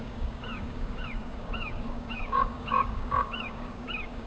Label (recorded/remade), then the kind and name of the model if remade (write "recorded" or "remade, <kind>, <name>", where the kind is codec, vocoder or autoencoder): remade, codec, DAC